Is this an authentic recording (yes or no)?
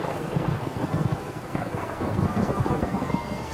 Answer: no